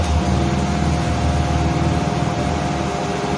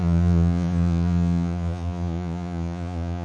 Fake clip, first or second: second